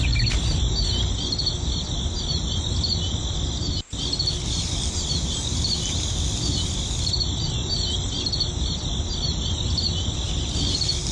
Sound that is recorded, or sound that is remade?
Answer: recorded